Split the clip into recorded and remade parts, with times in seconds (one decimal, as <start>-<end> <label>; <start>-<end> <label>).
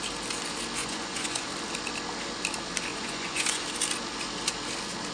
0.0-0.8 recorded; 0.8-1.5 remade; 1.5-2.9 recorded; 2.9-3.6 remade; 3.6-5.1 recorded